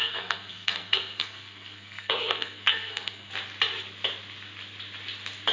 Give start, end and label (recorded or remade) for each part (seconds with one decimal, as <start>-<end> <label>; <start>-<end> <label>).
0.0-3.3 remade; 3.3-5.5 recorded